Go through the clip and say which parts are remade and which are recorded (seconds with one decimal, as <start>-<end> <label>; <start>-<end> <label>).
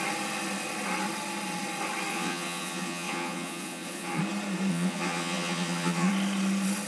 0.0-2.1 recorded; 2.1-4.2 remade; 4.2-4.7 recorded; 4.7-6.1 remade; 6.1-6.9 recorded